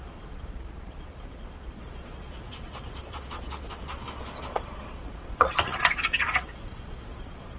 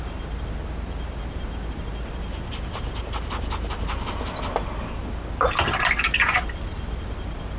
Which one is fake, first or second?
first